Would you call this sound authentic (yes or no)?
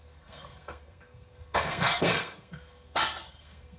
no